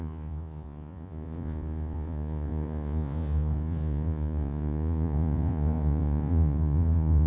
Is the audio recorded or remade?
remade